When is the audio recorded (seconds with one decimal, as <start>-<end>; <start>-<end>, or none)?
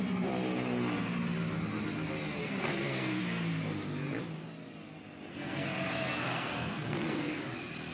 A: 0.0-2.4; 3.2-5.3; 7.4-7.9